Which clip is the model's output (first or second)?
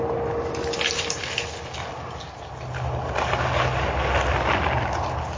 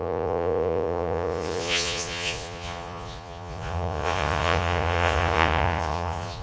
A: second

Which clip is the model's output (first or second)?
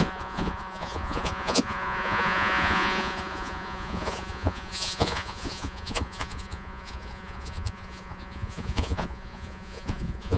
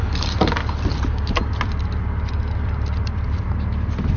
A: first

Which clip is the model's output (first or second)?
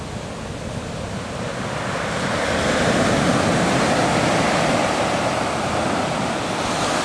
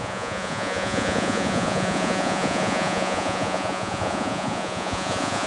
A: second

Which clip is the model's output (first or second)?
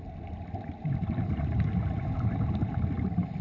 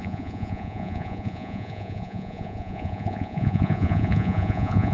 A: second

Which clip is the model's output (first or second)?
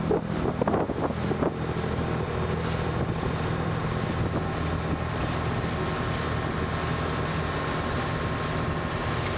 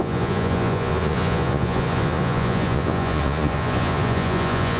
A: second